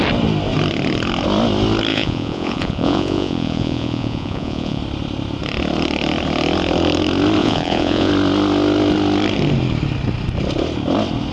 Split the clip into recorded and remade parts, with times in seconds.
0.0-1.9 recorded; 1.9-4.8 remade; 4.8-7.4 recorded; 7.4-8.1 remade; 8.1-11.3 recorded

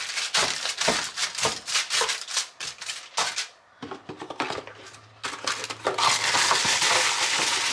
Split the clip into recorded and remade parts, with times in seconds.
0.0-7.7 recorded

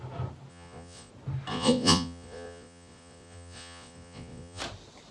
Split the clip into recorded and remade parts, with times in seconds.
0.0-0.5 recorded; 0.5-1.1 remade; 1.1-1.5 recorded; 1.5-4.6 remade; 4.6-5.1 recorded

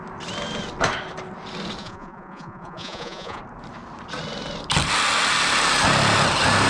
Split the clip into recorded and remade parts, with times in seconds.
0.0-1.8 recorded; 1.8-3.4 remade; 3.4-6.7 recorded